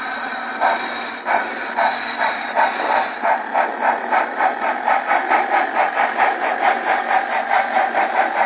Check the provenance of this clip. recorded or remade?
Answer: recorded